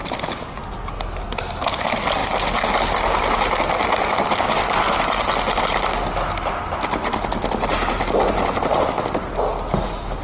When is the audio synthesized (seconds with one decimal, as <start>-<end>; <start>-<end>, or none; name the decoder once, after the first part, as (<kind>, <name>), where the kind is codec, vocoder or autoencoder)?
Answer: none